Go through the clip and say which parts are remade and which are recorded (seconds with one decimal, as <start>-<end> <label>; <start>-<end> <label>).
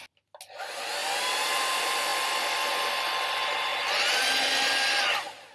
0.0-5.5 recorded